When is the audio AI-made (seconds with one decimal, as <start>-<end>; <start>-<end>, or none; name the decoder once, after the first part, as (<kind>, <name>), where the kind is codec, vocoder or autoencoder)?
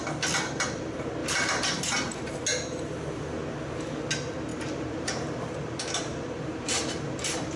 1.2-2.3 (vocoder, BigVGAN v2); 4.5-7.6